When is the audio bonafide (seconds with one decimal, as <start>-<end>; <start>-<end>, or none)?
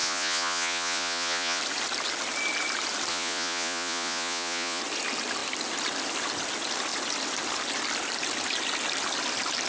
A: 1.6-3.1; 4.8-9.7